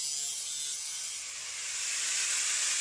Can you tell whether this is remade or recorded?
recorded